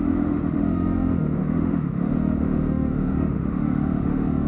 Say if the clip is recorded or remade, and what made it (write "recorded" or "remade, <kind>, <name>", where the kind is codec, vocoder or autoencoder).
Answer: remade, autoencoder, DAC-VAE